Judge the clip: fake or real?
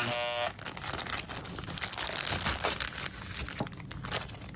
real